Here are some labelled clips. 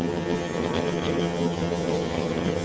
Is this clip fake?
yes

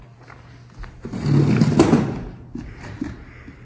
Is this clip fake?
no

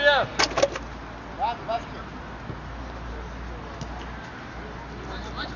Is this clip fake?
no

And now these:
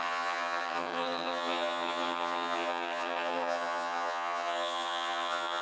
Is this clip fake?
yes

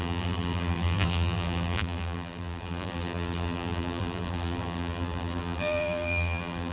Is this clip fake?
yes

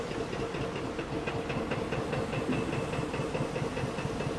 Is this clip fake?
no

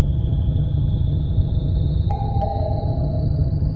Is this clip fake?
yes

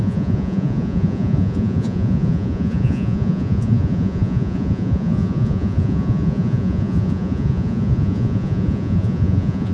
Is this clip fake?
yes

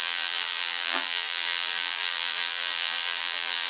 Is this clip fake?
yes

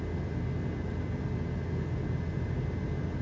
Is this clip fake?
no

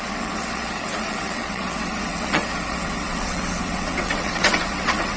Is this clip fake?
yes